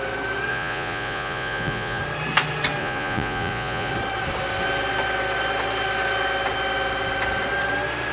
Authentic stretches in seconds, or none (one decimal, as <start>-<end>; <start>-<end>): 0.0-0.5; 2.0-2.8; 3.9-8.1